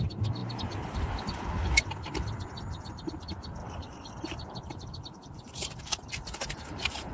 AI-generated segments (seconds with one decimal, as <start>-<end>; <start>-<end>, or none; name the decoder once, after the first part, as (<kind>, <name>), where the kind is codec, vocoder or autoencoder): 0.4-1.5 (vocoder, BigVGAN v2); 3.6-7.1